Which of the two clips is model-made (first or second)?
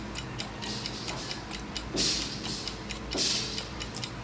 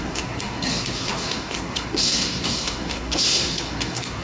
second